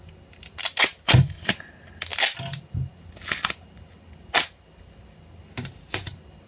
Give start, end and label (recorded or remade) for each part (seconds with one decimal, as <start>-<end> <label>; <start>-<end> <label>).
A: 0.0-6.5 recorded